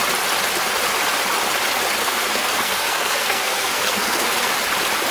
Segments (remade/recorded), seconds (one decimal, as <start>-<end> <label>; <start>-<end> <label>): 0.0-2.0 recorded; 2.0-4.5 remade; 4.5-5.1 recorded